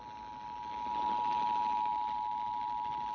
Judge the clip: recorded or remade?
recorded